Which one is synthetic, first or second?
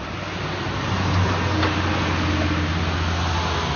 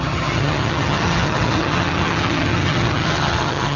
second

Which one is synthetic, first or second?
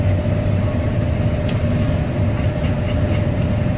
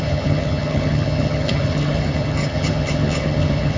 second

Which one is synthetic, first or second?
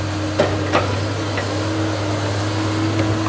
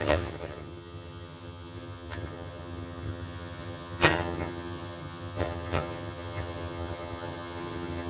second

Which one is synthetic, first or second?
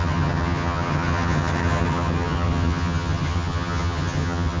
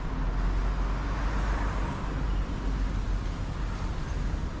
first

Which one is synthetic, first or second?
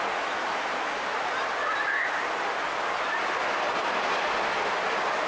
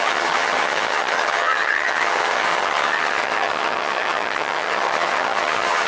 second